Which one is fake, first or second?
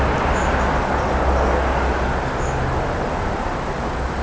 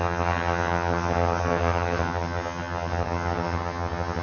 second